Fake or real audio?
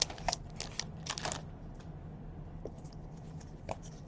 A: real